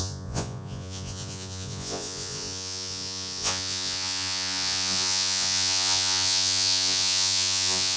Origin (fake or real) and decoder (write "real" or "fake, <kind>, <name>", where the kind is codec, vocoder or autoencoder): fake, vocoder, Vocos